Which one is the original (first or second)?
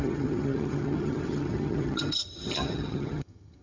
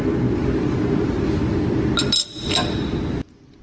second